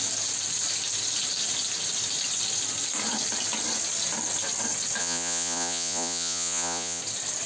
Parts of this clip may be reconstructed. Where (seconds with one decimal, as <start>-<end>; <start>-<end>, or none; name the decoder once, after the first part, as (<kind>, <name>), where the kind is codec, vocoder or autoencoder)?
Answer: 5.0-7.0 (vocoder, Vocos)